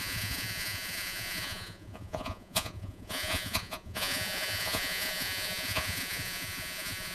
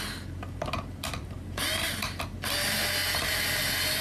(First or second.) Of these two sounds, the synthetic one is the first